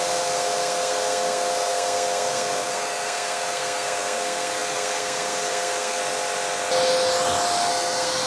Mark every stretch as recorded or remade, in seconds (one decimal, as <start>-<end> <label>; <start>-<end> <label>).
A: 0.0-6.0 remade; 6.0-7.7 recorded; 7.7-8.3 remade